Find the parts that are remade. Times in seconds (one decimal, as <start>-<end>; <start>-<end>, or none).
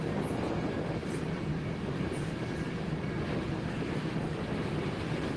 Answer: 1.5-2.9